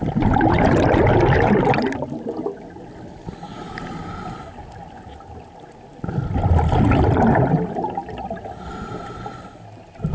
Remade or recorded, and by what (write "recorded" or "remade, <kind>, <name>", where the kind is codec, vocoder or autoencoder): recorded